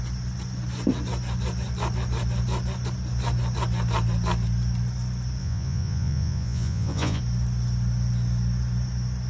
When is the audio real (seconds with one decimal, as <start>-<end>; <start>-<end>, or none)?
0.0-5.4; 7.2-9.3